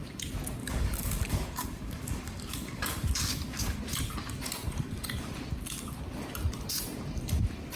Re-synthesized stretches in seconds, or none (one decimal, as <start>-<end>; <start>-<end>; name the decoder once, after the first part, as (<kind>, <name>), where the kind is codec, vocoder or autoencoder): 0.6-3.8 (codec, DAC)

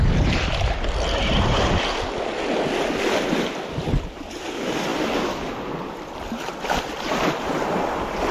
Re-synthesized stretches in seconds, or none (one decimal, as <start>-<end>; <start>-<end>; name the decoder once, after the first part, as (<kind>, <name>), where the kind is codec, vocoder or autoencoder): none

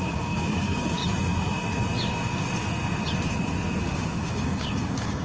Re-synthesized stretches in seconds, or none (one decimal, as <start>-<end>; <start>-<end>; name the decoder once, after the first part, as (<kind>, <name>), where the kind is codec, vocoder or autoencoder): 0.0-1.0 (codec, DAC); 3.8-5.2

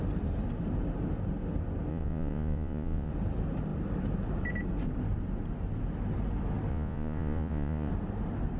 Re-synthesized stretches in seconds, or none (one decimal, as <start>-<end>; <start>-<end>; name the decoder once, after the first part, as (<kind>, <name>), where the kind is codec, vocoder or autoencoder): 1.9-3.1 (vocoder, Vocos); 6.7-7.9

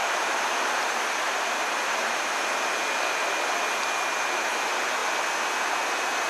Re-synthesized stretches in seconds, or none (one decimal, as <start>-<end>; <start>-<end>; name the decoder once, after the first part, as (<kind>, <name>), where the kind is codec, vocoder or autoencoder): none

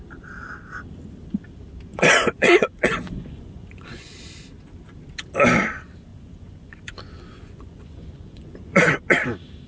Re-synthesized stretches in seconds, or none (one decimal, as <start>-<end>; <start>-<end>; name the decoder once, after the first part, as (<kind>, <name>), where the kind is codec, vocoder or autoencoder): 1.9-4.1 (vocoder, Vocos); 6.1-8.9